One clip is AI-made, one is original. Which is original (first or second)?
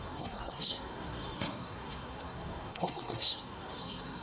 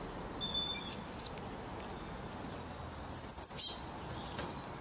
second